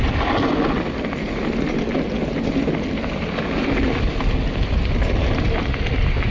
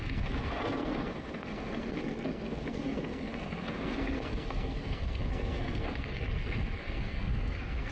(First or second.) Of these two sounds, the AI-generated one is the second